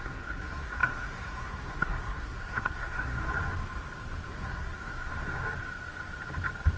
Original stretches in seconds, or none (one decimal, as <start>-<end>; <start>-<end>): 3.2-4.3; 5.1-6.8